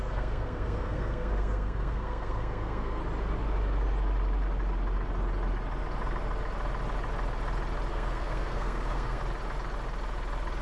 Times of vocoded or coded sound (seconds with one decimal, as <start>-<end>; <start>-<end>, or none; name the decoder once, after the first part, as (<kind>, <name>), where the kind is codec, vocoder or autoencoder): 0.0-3.0 (codec, SNAC); 7.9-9.2